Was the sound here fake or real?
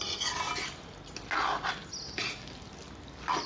real